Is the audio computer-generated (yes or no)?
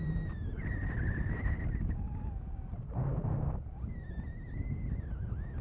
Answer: no